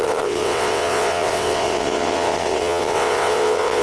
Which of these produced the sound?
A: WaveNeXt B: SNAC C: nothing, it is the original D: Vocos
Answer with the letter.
A